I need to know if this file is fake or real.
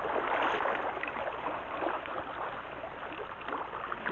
real